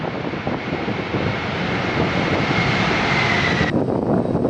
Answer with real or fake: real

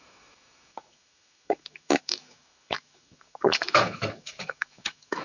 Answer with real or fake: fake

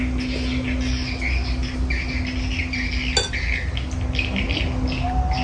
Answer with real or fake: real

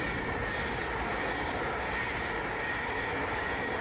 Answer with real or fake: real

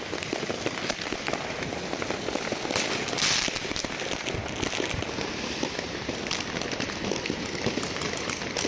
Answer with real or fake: real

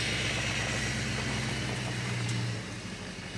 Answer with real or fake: real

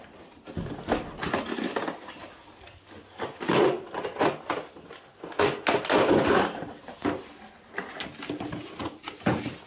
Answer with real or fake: real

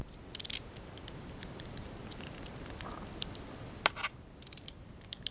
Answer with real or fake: fake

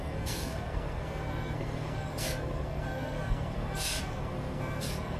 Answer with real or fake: fake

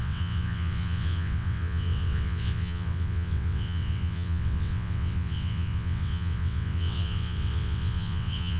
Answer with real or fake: fake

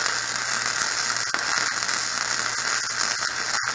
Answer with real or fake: real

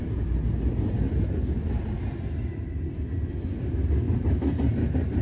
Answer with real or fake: real